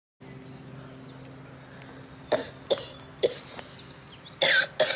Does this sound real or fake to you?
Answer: real